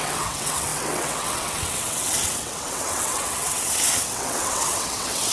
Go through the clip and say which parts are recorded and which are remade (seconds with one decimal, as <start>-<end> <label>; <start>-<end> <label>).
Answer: 0.0-5.3 remade